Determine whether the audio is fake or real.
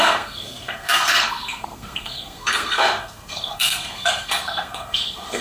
fake